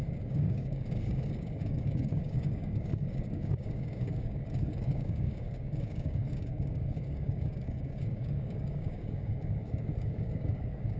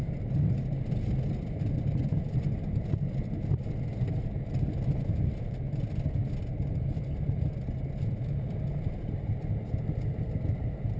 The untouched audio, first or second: second